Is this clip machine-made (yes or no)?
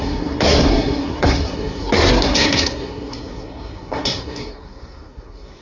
yes